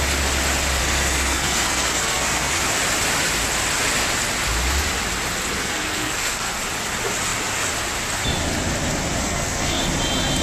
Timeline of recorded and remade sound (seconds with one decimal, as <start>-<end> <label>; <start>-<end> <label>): 0.0-0.8 recorded; 0.8-2.6 remade; 2.6-5.6 recorded; 5.6-6.6 remade; 6.6-9.2 recorded; 9.2-9.8 remade; 9.8-10.4 recorded